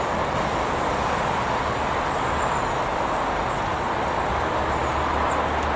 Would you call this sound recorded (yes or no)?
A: yes